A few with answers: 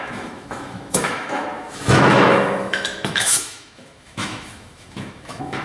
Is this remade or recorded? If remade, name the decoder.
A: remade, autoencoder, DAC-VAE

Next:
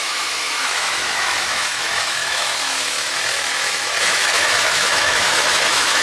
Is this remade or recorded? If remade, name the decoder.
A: remade, autoencoder, DAC-VAE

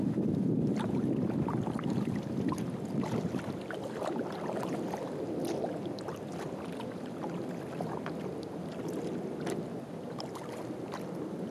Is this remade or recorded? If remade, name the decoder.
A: recorded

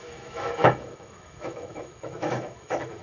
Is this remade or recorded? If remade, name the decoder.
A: remade, autoencoder, DAC-VAE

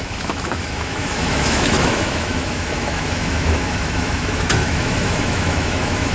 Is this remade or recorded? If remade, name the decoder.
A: remade, autoencoder, DAC-VAE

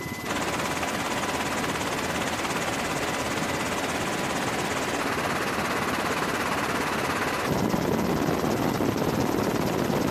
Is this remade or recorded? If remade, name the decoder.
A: recorded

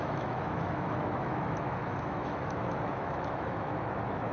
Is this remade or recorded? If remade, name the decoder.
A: remade, autoencoder, DAC-VAE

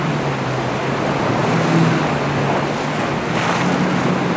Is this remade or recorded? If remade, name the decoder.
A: recorded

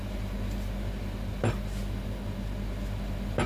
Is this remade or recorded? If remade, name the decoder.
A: recorded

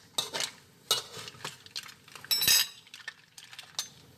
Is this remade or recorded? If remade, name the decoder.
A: recorded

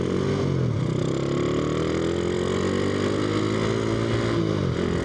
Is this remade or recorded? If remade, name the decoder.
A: recorded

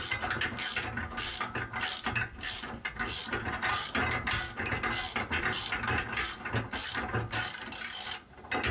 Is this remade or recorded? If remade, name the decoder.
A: recorded